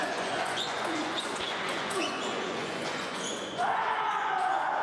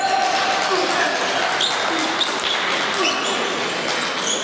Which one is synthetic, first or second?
first